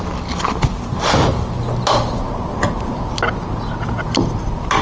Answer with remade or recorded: recorded